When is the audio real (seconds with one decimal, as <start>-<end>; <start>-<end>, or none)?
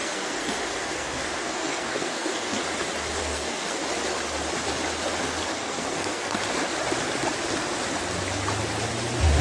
2.6-3.2; 3.8-5.5; 6.4-9.4